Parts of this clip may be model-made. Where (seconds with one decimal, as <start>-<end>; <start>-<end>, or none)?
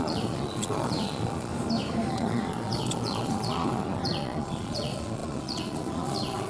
0.0-1.5; 2.1-6.5